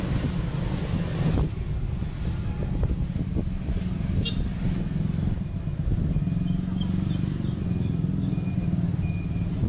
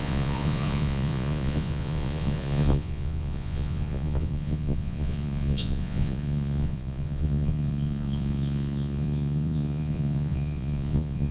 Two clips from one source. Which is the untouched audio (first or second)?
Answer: first